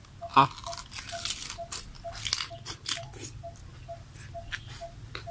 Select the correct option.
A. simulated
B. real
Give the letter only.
B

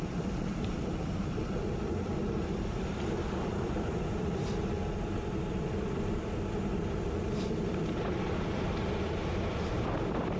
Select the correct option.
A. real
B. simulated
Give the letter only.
B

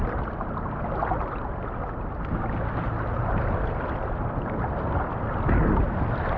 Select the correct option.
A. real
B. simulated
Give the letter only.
A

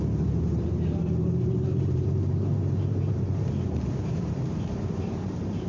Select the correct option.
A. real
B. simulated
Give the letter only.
B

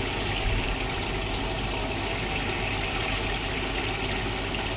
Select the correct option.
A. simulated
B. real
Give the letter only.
B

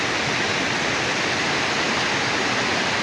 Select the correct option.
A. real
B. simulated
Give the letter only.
A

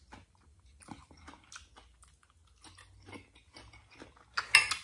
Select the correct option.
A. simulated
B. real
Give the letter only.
B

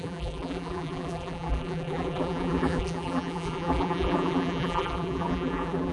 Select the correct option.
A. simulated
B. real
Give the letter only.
A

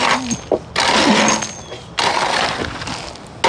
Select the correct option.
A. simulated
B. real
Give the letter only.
B